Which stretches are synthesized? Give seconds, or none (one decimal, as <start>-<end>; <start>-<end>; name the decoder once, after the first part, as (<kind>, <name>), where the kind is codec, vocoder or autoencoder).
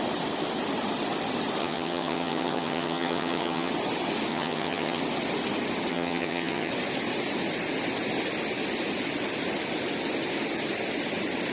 1.6-3.7 (vocoder, HiFi-GAN); 4.3-5.0; 5.9-6.7